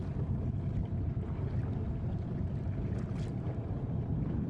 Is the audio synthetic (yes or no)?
no